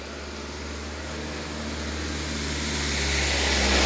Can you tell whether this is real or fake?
real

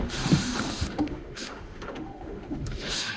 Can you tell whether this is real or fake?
fake